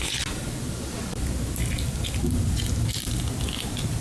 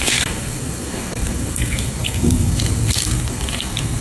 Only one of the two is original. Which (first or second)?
first